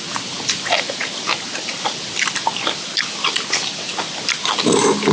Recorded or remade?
recorded